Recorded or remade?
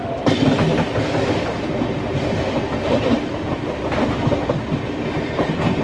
recorded